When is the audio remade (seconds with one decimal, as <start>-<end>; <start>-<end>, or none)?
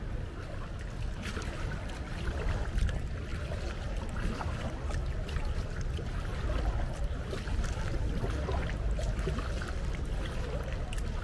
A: none